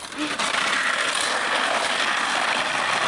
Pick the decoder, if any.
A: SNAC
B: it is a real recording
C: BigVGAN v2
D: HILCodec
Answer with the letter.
B